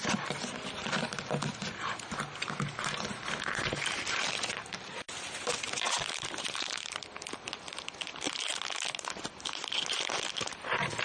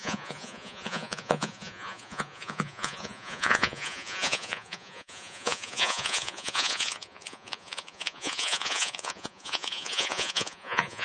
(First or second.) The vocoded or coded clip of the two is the second